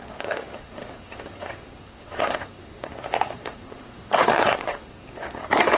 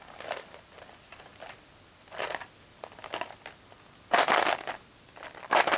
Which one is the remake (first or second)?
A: first